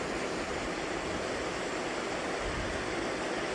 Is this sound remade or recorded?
recorded